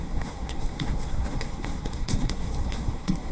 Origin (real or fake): fake